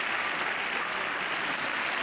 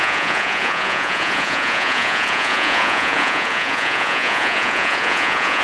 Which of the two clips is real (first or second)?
first